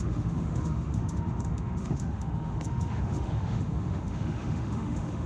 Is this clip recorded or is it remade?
remade